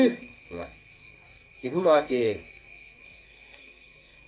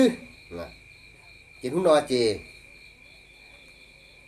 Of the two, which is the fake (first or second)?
first